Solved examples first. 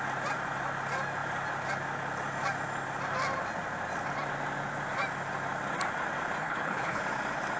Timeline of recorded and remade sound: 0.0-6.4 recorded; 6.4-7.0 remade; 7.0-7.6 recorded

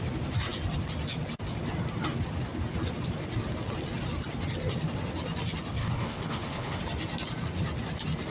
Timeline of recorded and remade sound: 0.0-5.8 recorded; 5.8-6.8 remade; 6.8-8.3 recorded

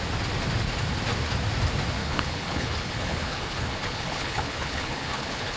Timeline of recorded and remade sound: 0.0-2.0 recorded; 2.0-5.6 remade

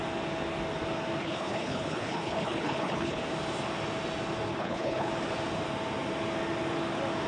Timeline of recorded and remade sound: 0.0-1.2 recorded; 1.2-3.2 remade; 3.2-4.5 recorded; 4.5-5.1 remade; 5.1-7.3 recorded

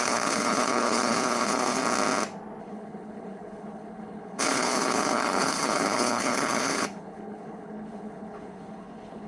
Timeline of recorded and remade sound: 0.0-1.8 remade; 1.8-2.6 recorded; 2.6-9.3 remade